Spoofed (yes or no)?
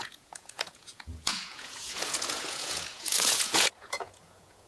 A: yes